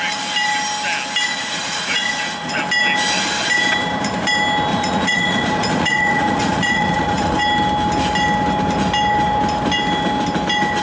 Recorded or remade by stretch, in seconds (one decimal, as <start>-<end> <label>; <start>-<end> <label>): 0.0-1.3 recorded; 1.3-2.6 remade; 2.6-4.7 recorded; 4.7-7.4 remade; 7.4-10.8 recorded